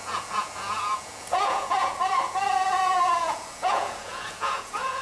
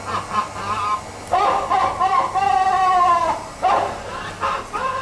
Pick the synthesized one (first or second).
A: first